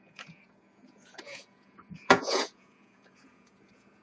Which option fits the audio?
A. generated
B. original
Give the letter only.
A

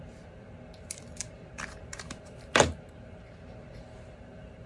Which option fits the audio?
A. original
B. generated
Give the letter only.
B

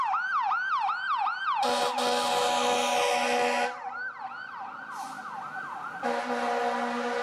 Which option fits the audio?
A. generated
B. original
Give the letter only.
B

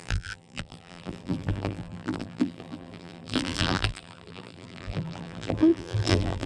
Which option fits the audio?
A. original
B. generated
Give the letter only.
B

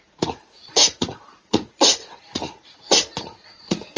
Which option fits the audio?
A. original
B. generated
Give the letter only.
B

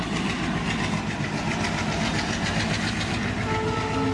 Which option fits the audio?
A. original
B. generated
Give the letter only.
A